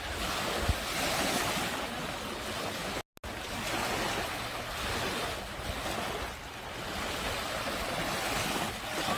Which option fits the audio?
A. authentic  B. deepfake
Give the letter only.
A